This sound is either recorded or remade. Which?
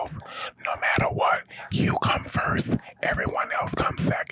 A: remade